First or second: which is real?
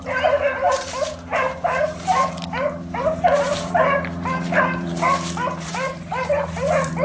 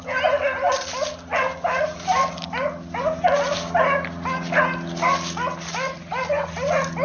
second